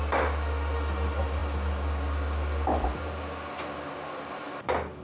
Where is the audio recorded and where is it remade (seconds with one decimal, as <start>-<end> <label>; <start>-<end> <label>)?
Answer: 0.0-5.0 recorded